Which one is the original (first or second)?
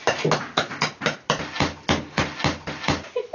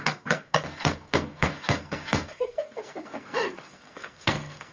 first